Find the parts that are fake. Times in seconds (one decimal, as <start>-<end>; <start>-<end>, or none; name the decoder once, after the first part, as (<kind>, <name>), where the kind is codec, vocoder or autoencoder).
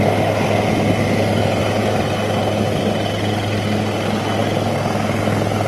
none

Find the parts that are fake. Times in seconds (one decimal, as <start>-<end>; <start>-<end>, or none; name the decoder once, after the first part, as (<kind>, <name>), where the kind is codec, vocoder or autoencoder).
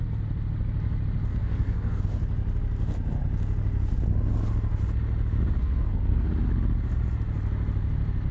1.3-2.0 (codec, SNAC); 5.6-6.3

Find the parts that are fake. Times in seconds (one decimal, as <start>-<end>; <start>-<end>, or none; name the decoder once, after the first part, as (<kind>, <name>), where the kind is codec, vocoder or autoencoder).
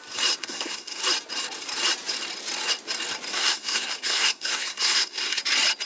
0.4-1.0 (codec, SNAC); 3.3-5.4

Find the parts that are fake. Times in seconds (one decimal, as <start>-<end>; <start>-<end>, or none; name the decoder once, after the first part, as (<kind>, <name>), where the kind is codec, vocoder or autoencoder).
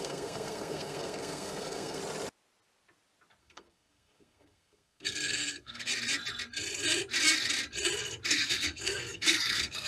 0.0-2.0 (codec, SNAC); 3.4-5.9; 8.3-9.9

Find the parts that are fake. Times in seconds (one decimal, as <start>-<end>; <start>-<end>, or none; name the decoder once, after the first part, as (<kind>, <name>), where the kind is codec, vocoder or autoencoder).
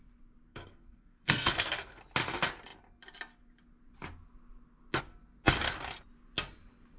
0.5-2.0 (codec, SNAC)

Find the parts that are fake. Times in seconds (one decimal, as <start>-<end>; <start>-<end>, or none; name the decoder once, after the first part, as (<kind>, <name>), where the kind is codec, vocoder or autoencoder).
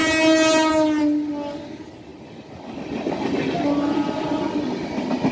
none